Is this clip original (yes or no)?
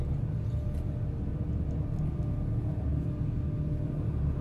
yes